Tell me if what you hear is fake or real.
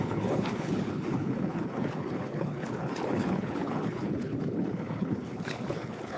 fake